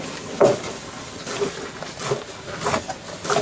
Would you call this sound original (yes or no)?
yes